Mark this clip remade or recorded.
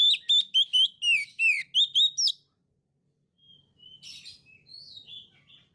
recorded